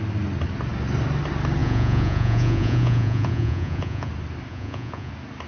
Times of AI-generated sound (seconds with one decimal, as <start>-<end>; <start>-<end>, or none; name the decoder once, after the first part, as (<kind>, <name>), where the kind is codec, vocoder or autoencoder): 1.6-4.1 (vocoder, Vocos); 4.5-5.1